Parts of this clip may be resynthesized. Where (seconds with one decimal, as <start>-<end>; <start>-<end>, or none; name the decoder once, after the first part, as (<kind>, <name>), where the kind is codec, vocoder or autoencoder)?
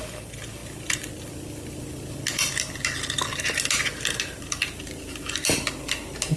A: none